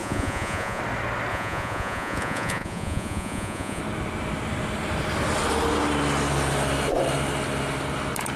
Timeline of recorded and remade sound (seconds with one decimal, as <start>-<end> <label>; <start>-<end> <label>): 0.0-0.8 remade; 0.8-1.3 recorded; 1.3-3.8 remade; 3.8-8.4 recorded